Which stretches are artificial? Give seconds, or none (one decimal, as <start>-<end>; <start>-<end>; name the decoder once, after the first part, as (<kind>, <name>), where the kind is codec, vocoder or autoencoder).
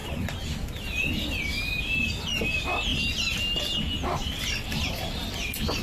none